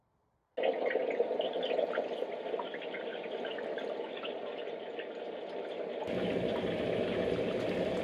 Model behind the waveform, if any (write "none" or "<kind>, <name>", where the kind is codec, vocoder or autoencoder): none